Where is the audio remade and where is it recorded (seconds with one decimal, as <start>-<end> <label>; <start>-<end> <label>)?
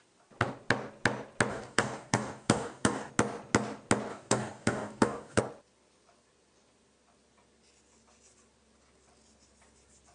0.0-1.5 recorded; 1.5-3.1 remade; 3.1-4.1 recorded; 4.1-5.4 remade; 5.4-10.1 recorded